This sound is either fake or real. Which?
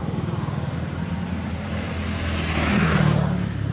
real